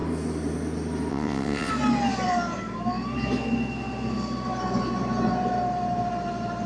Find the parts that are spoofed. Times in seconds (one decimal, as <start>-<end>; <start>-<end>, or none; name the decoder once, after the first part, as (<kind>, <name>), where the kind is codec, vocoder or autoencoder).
1.1-1.7 (vocoder, WaveNeXt)